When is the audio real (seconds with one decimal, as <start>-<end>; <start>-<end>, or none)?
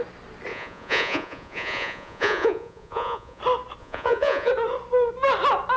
0.0-0.5; 3.4-3.8; 4.5-5.8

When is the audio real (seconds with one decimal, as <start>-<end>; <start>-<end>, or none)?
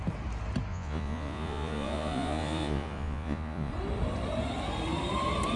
0.0-0.7; 3.7-5.6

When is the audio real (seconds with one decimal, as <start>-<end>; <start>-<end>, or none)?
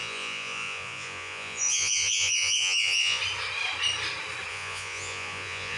3.2-4.5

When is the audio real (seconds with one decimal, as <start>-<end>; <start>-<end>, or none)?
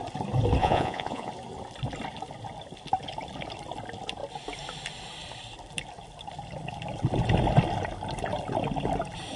0.0-0.6; 1.3-9.4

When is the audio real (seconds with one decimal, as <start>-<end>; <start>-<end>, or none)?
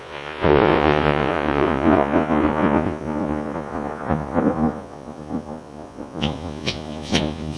none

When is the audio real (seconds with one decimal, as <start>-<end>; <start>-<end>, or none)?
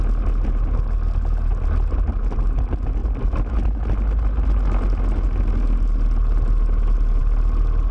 0.0-7.9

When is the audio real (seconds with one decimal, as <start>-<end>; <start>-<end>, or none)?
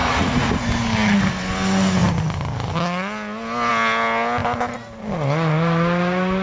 0.6-6.4